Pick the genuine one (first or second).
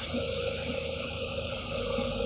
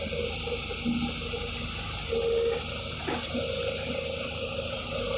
second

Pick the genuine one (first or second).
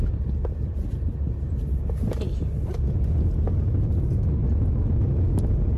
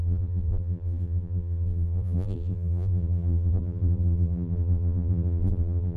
first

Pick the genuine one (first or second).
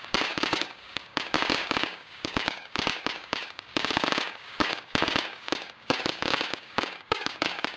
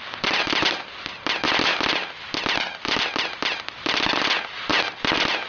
second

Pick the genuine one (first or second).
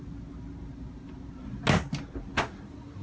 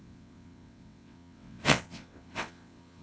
first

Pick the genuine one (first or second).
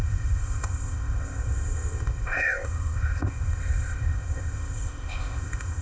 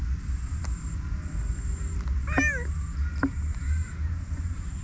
second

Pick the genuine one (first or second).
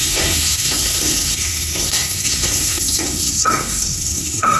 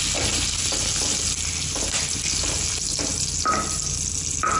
second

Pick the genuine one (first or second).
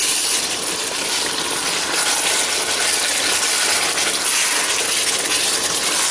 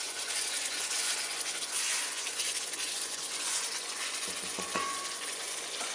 first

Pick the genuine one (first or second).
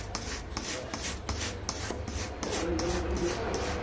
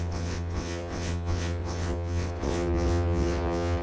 first